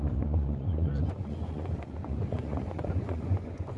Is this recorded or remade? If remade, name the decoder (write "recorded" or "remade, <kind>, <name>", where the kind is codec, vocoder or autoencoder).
remade, vocoder, Vocos